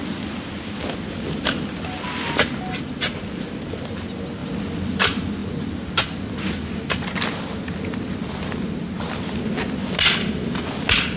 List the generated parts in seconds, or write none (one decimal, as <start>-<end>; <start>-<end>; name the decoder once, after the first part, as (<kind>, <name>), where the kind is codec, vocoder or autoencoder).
none